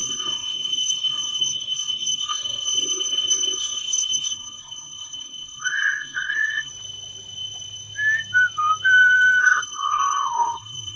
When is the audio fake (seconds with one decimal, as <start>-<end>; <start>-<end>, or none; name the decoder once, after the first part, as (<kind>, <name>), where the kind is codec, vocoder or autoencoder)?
0.0-6.7 (codec, SNAC); 9.4-11.0

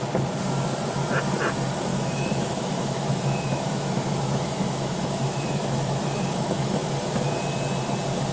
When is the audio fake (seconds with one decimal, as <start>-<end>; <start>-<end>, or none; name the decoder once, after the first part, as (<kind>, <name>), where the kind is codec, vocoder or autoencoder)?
1.9-6.9 (autoencoder, DAC-VAE)